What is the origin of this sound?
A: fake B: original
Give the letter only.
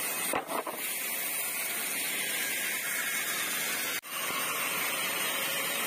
B